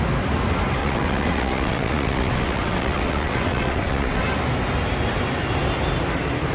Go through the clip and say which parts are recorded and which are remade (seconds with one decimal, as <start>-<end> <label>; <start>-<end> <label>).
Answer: 0.0-0.8 recorded; 0.8-4.2 remade; 4.2-6.5 recorded